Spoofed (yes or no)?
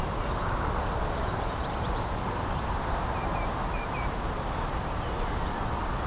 no